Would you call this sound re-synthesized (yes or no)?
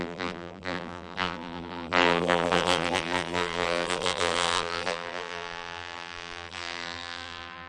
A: yes